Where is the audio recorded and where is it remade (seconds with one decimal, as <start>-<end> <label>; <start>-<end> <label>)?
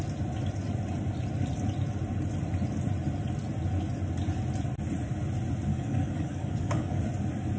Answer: 0.0-5.7 recorded; 5.7-7.0 remade; 7.0-7.6 recorded